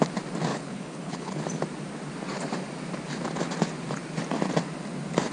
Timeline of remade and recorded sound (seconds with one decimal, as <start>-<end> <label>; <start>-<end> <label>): 0.0-0.5 recorded; 0.5-1.4 remade; 1.4-5.3 recorded